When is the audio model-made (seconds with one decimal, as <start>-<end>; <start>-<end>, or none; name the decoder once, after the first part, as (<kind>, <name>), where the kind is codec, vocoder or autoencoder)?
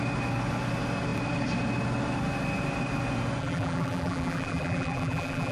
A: 3.4-5.5 (vocoder, BigVGAN v2)